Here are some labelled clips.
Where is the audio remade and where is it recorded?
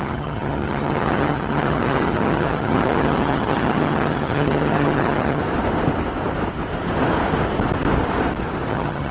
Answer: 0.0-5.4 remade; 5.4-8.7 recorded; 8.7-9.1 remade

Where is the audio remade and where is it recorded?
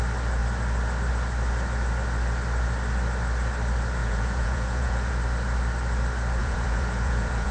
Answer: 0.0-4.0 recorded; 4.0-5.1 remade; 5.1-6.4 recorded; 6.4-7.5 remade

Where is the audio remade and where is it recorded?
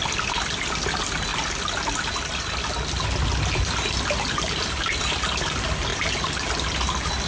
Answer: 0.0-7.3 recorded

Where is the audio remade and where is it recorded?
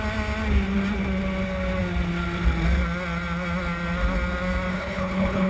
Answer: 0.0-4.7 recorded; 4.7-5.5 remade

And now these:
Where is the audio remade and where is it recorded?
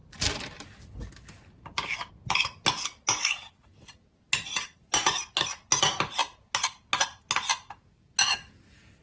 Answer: 0.0-9.0 recorded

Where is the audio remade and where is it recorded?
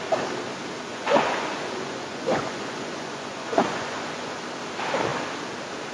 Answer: 0.0-0.9 recorded; 0.9-4.4 remade; 4.4-5.9 recorded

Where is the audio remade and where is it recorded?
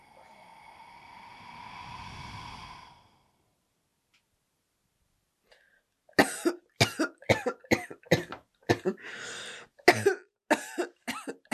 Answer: 0.0-11.5 recorded